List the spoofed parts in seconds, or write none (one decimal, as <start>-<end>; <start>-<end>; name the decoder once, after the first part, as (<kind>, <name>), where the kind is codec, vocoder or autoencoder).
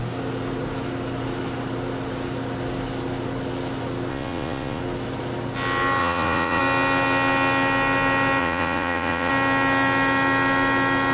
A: 4.1-4.8 (vocoder, Vocos); 6.0-6.6; 8.4-9.3